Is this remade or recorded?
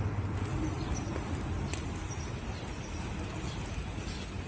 recorded